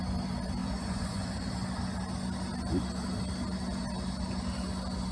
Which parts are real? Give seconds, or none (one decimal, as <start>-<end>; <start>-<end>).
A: 0.0-0.6; 1.5-5.1